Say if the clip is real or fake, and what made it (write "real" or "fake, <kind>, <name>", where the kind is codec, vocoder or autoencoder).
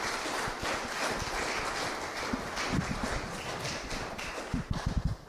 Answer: real